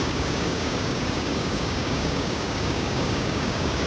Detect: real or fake fake